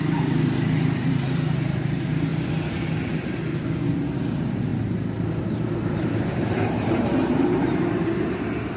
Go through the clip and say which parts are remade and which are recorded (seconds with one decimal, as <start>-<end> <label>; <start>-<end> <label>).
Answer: 0.0-2.3 remade; 2.3-4.2 recorded; 4.2-4.7 remade; 4.7-5.4 recorded; 5.4-8.8 remade